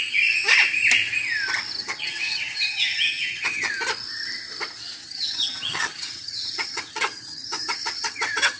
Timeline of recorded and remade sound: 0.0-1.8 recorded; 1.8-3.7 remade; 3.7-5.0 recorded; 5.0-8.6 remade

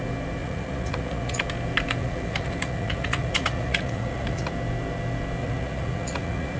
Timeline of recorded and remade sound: 0.0-0.4 recorded; 0.4-1.4 remade; 1.4-2.0 recorded; 2.0-4.5 remade; 4.5-5.4 recorded; 5.4-6.6 remade

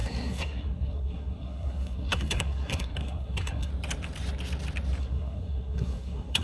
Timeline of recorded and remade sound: 0.0-3.7 remade; 3.7-5.0 recorded; 5.0-6.4 remade

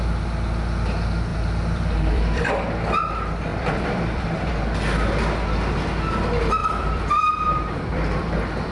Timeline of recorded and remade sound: 0.0-1.3 recorded; 1.3-2.5 remade; 2.5-3.5 recorded; 3.5-4.5 remade; 4.5-6.6 recorded; 6.6-8.2 remade; 8.2-8.7 recorded

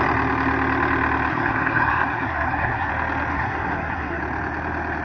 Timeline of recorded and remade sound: 0.0-1.3 recorded; 1.3-2.9 remade; 2.9-3.3 recorded; 3.3-4.2 remade; 4.2-5.0 recorded

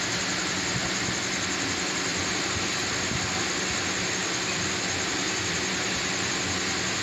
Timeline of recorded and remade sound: 0.0-7.0 recorded

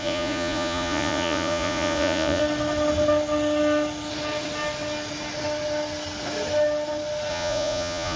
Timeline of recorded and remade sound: 0.0-2.4 remade; 2.4-7.3 recorded; 7.3-8.2 remade